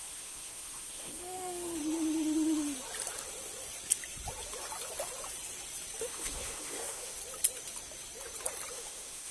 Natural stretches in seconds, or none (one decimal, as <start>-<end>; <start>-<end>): 1.8-6.0; 7.2-8.7